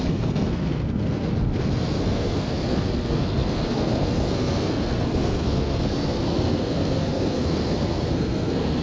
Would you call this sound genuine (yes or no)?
no